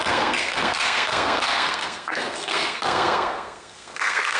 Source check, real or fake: fake